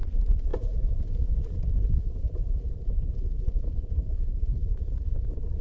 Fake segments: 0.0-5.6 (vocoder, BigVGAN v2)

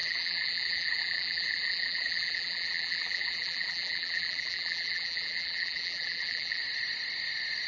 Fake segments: 0.0-6.6 (vocoder, BigVGAN v2)

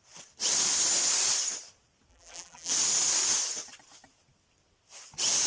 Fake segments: 2.1-2.7 (vocoder, BigVGAN v2)

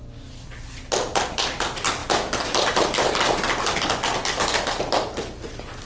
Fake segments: none

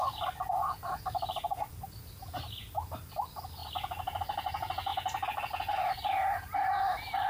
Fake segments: none

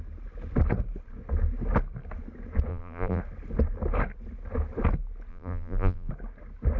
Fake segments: 2.7-3.2 (vocoder, BigVGAN v2); 5.3-6.1